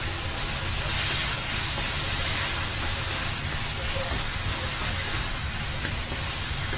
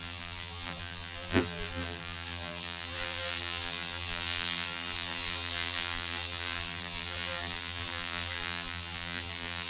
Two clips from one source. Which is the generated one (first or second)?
second